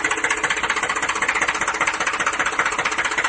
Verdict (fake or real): real